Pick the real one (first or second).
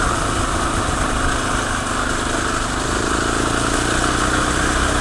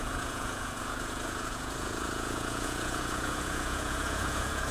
first